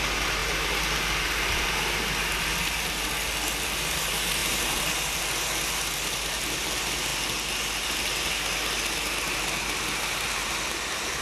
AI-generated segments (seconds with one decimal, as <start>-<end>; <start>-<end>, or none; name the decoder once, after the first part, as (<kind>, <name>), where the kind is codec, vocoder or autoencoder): none